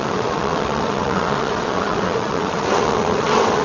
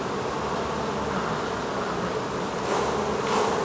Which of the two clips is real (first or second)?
second